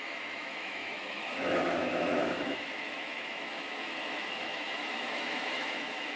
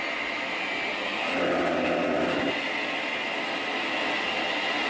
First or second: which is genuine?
second